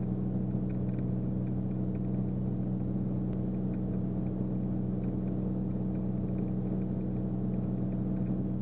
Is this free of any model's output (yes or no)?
yes